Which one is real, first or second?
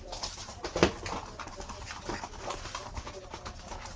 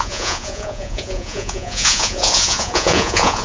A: first